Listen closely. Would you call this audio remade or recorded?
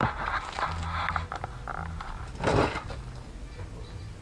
recorded